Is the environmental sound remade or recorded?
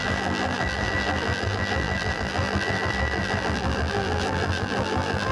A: remade